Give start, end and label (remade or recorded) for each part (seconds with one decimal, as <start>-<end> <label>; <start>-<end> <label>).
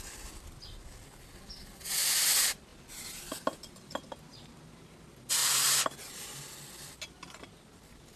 0.0-8.2 recorded